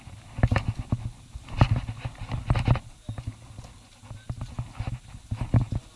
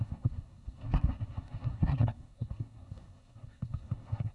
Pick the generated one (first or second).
second